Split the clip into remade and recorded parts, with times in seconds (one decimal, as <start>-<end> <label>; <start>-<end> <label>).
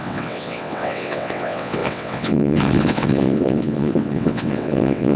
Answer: 0.0-5.2 remade